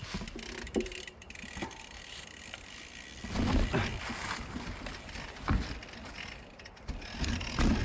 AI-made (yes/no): no